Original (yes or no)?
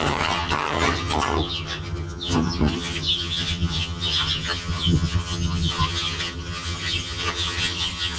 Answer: no